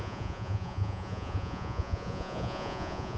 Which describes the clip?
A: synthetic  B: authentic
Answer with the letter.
A